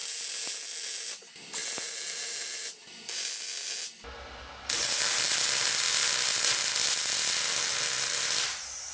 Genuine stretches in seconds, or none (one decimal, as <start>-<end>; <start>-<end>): 0.0-8.9